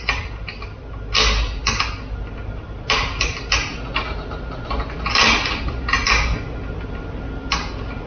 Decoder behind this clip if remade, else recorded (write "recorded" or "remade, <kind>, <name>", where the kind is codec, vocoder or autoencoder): recorded